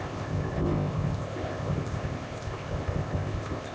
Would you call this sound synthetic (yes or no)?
yes